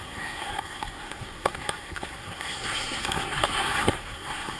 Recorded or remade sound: remade